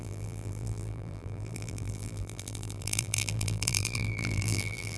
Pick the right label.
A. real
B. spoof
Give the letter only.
B